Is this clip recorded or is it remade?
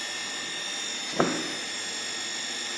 recorded